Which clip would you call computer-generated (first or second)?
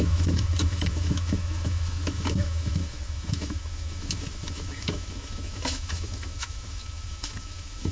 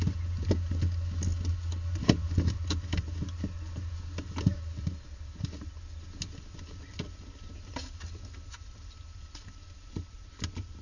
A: first